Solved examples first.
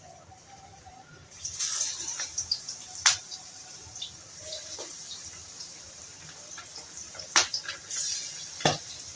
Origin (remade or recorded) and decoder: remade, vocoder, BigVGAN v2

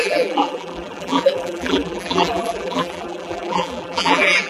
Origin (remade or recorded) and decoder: remade, vocoder, BigVGAN v2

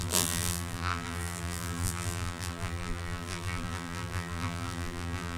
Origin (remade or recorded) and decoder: remade, vocoder, BigVGAN v2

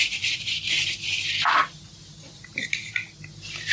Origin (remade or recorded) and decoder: recorded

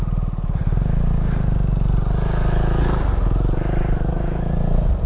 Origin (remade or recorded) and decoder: recorded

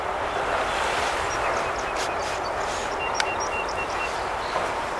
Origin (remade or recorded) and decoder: remade, vocoder, BigVGAN v2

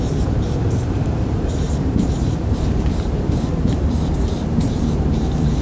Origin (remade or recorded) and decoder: remade, vocoder, BigVGAN v2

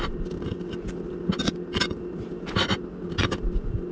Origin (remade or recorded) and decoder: recorded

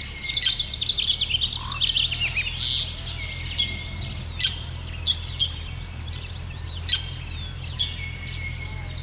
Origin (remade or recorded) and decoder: recorded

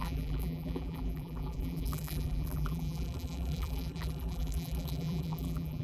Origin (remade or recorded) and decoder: remade, vocoder, BigVGAN v2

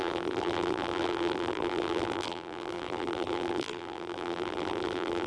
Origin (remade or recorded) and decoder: remade, vocoder, BigVGAN v2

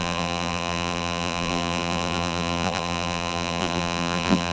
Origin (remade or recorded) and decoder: remade, vocoder, BigVGAN v2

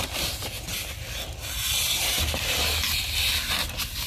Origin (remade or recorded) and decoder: recorded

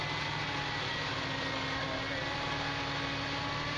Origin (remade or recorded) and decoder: recorded